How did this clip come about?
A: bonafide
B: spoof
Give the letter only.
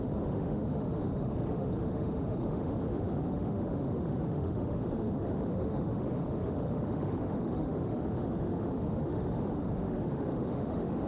B